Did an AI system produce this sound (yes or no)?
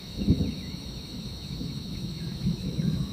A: yes